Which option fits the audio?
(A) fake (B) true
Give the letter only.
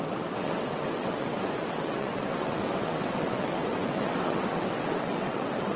A